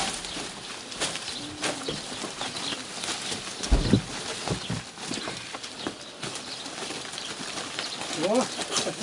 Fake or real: real